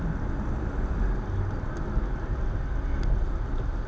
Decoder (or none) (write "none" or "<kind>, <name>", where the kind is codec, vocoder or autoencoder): none